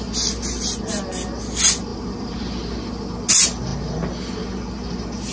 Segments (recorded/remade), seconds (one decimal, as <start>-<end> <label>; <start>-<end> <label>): 0.0-5.3 recorded